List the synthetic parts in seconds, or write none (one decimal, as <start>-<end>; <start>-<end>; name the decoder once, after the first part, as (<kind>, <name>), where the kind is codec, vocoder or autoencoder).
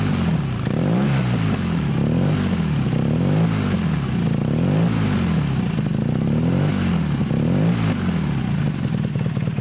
none